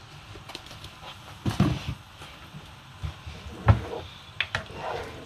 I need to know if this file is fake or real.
real